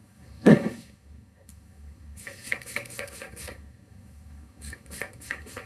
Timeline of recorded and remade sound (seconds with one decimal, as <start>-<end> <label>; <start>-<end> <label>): 0.0-5.7 remade